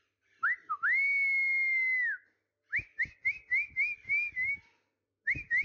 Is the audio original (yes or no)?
yes